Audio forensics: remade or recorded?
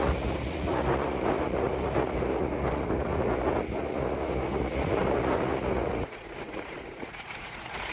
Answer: remade